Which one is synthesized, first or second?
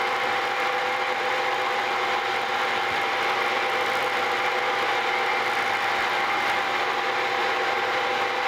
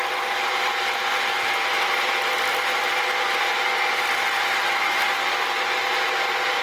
first